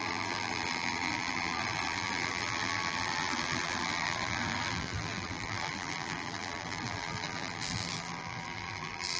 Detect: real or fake fake